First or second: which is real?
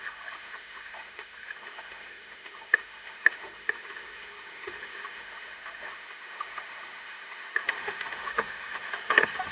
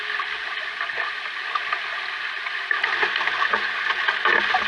second